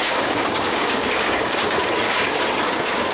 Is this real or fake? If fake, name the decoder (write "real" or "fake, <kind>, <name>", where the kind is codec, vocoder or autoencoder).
fake, codec, DAC